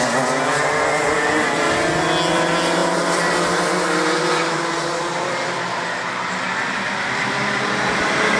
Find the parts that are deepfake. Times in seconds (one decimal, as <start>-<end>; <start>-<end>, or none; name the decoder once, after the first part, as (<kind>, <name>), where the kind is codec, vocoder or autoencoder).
none